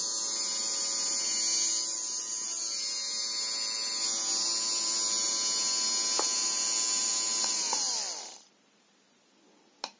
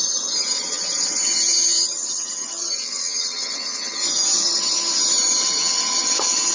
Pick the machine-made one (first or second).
second